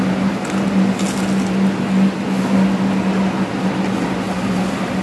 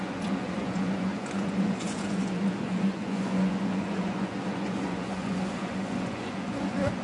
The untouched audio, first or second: first